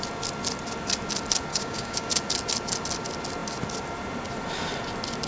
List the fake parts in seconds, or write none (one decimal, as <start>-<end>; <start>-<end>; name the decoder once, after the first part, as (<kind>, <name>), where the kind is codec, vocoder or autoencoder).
1.5-2.1 (codec, DAC)